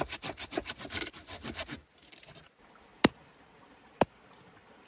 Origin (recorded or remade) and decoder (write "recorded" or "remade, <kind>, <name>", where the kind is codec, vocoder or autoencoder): recorded